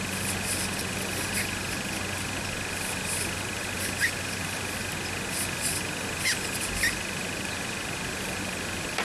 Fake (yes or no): no